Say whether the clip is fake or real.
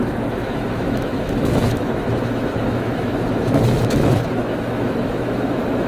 fake